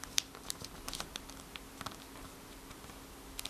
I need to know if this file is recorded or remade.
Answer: recorded